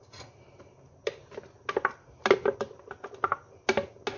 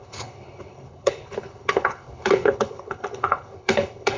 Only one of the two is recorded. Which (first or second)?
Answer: first